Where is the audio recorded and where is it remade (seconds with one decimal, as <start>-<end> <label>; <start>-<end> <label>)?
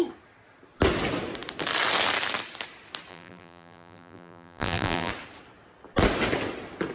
0.0-3.1 recorded; 3.1-5.1 remade; 5.1-6.9 recorded